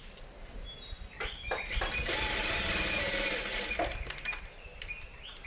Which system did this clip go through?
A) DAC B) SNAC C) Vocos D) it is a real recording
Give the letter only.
D